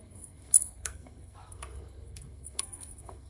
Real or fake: fake